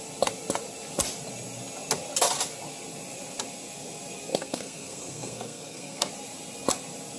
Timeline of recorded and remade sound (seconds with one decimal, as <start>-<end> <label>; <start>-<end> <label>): 0.0-4.3 recorded; 4.3-6.1 remade; 6.1-7.2 recorded